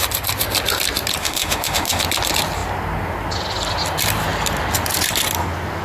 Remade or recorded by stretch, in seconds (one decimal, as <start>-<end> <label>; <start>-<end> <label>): 0.0-1.2 recorded; 1.2-2.0 remade; 2.0-5.8 recorded